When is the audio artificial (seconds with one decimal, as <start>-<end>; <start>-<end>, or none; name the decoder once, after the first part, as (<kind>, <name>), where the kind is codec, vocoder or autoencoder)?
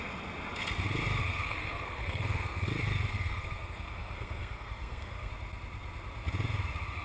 1.2-2.7 (codec, SNAC); 3.1-5.3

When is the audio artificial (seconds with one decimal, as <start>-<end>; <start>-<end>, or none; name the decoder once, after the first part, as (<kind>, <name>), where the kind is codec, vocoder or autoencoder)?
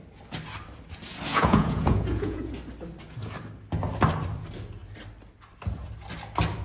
1.3-2.5 (vocoder, Vocos)